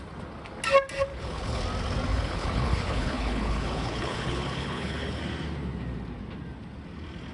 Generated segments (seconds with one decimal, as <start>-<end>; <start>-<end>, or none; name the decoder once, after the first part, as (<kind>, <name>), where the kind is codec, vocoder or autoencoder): 1.1-1.6 (codec, HILCodec); 2.1-5.2